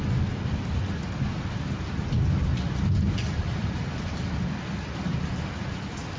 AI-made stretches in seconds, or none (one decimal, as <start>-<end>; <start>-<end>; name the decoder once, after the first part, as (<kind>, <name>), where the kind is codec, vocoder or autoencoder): 2.5-4.5 (vocoder, BigVGAN v2)